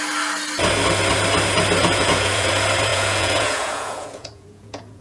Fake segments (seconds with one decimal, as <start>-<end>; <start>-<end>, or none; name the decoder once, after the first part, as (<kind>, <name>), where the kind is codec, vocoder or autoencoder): 1.8-2.5 (vocoder, Vocos); 2.9-5.0